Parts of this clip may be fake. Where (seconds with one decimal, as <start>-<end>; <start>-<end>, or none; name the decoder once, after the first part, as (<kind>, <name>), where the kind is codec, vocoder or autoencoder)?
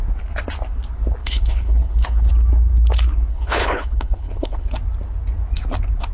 1.2-2.3 (codec, HILCodec); 3.3-4.7